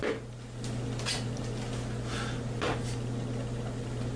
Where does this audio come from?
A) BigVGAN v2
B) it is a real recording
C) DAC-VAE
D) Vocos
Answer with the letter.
B